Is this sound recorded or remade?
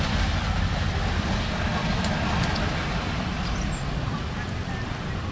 recorded